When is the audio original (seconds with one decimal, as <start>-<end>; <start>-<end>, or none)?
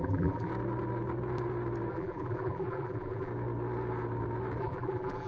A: 0.5-1.9; 3.3-4.6